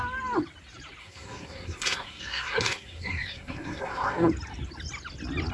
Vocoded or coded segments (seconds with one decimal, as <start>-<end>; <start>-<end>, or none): 1.0-4.3

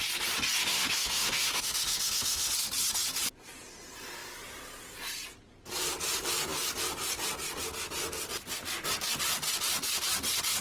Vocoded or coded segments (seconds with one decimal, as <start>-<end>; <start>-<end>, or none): 0.6-2.5

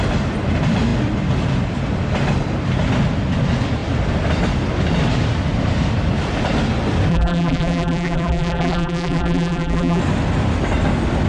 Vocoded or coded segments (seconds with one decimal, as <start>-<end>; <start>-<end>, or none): 7.1-10.0

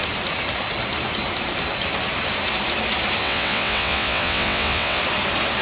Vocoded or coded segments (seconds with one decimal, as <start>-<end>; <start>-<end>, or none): 3.2-5.0

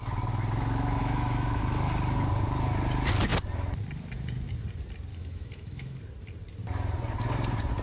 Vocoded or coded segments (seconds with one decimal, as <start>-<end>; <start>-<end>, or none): 1.0-1.6; 5.1-6.0

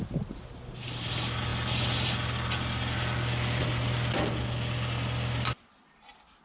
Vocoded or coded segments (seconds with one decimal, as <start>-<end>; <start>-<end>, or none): none

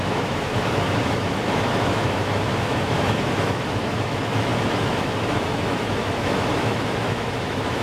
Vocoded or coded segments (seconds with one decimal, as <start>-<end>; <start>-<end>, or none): 0.0-7.8